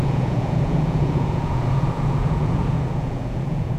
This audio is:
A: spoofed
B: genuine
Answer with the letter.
A